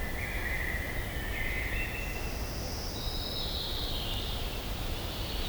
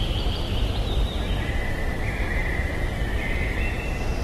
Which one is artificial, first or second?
second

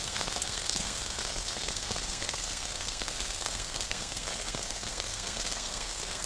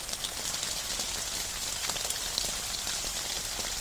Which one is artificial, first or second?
first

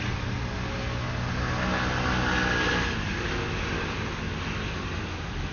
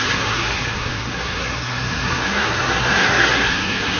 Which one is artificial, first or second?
second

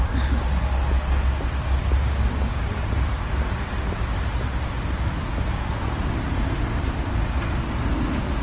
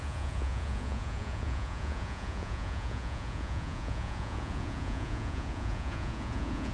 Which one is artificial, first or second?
second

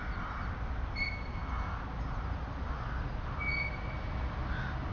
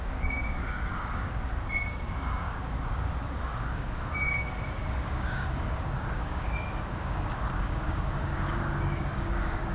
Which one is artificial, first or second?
second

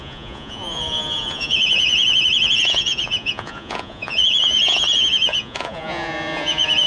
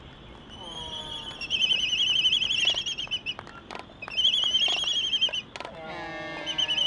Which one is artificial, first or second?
first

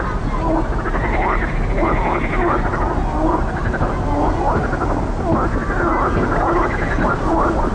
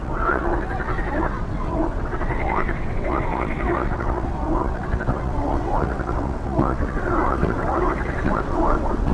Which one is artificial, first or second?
second